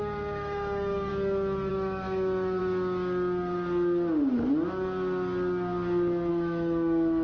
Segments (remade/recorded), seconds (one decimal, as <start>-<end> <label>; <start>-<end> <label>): 0.0-1.1 remade; 1.1-1.7 recorded; 1.7-2.6 remade; 2.6-6.3 recorded; 6.3-7.2 remade